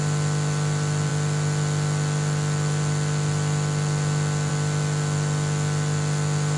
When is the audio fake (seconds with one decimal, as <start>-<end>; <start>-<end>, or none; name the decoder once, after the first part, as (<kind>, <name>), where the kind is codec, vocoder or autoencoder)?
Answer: none